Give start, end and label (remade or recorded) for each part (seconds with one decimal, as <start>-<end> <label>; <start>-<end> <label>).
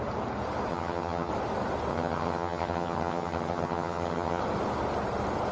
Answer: 0.0-0.7 recorded; 0.7-1.3 remade; 1.3-1.9 recorded; 1.9-4.4 remade; 4.4-5.5 recorded